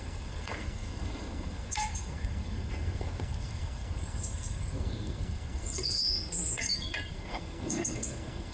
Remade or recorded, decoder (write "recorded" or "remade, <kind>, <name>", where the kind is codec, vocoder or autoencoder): remade, codec, SNAC